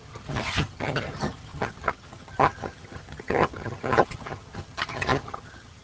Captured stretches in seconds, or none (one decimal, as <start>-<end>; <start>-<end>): none